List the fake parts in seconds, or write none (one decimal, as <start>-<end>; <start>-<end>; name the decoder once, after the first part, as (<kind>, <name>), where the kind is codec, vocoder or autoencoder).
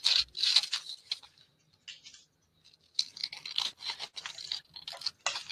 none